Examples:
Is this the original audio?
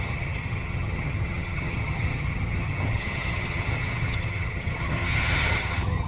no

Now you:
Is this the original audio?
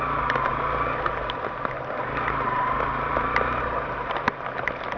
yes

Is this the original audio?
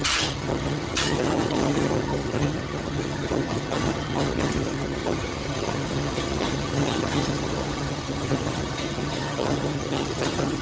no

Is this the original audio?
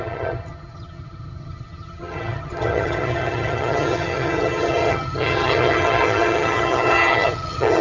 no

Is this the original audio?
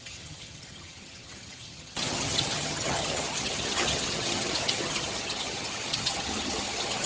no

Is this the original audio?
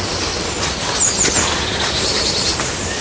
yes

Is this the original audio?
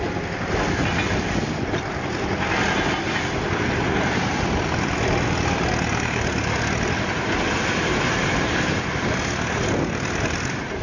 yes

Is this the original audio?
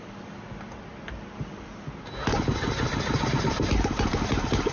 yes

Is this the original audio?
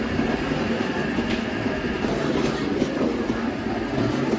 yes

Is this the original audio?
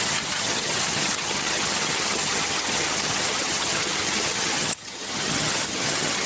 no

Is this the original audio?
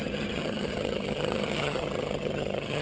no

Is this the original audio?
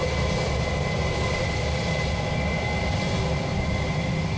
yes